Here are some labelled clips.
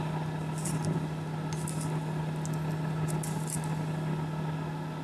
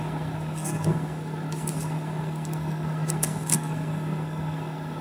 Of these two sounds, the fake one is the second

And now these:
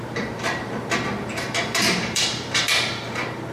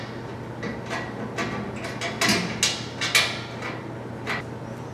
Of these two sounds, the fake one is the first